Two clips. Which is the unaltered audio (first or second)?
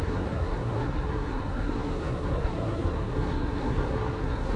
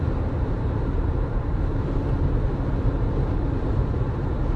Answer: second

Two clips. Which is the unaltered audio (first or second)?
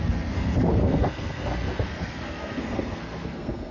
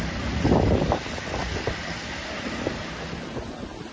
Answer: second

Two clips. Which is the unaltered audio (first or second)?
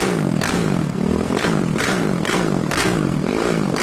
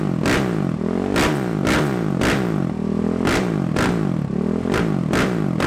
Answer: second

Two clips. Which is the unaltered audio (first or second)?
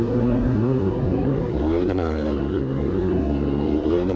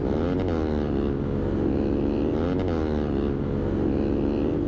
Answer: second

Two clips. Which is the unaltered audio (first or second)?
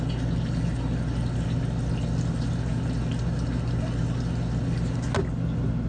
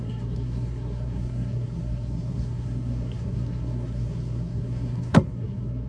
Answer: first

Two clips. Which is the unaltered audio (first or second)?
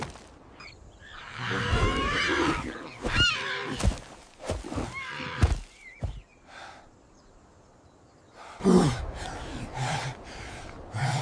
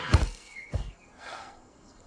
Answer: first